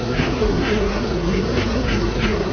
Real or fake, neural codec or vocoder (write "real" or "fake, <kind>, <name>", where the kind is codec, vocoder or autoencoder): fake, codec, SNAC